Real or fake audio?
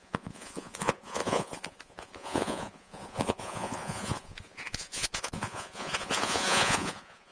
fake